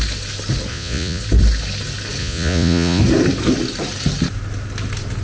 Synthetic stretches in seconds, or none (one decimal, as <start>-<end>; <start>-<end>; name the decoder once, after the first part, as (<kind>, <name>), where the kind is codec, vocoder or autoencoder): 0.7-1.2 (vocoder, Vocos); 2.2-3.0